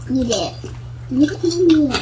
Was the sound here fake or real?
real